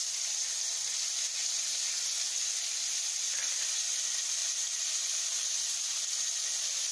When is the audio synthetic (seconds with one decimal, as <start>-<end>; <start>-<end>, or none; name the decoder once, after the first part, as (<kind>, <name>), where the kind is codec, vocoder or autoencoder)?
1.4-1.9 (vocoder, BigVGAN v2); 4.4-5.9